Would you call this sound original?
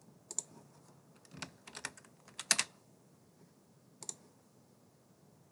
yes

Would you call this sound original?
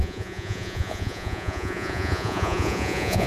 no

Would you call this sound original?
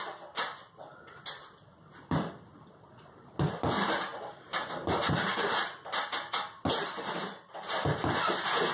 yes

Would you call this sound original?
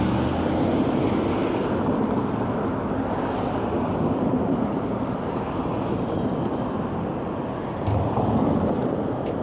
yes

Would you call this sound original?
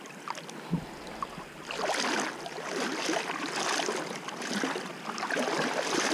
yes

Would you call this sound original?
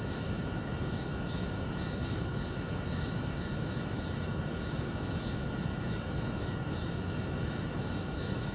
no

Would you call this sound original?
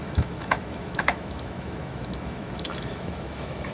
no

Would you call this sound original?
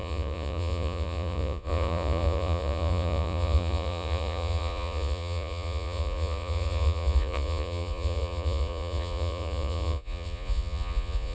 no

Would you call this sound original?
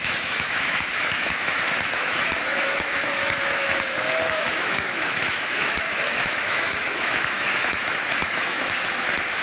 no